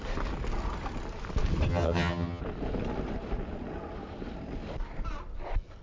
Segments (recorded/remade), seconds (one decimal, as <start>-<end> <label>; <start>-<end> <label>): 0.0-1.7 recorded; 1.7-2.4 remade; 2.4-5.8 recorded